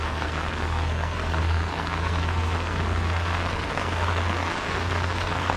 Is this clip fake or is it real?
fake